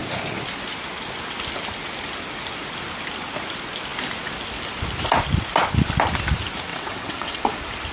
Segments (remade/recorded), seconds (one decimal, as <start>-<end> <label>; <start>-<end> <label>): 0.0-6.7 recorded; 6.7-7.4 remade; 7.4-7.9 recorded